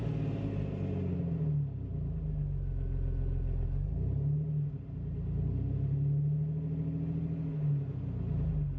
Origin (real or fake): real